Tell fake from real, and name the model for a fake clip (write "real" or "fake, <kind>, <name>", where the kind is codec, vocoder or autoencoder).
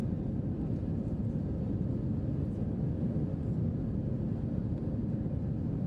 real